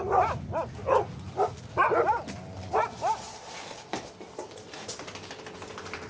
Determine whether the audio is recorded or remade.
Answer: recorded